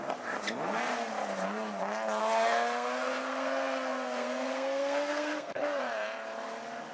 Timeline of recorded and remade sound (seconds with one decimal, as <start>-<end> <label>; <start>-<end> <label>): 0.0-2.2 recorded; 2.2-5.8 remade; 5.8-6.9 recorded